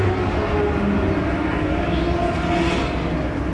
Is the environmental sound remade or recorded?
recorded